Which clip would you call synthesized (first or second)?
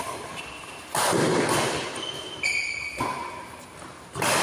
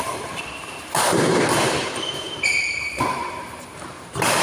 second